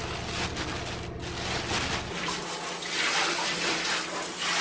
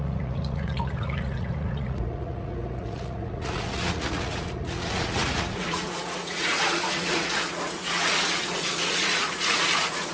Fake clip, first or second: second